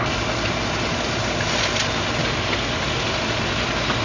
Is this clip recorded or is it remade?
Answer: recorded